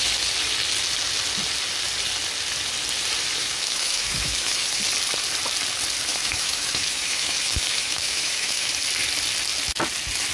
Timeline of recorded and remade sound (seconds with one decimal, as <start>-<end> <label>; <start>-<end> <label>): 0.0-3.4 recorded; 3.4-4.8 remade; 4.8-6.1 recorded; 6.1-8.7 remade; 8.7-10.3 recorded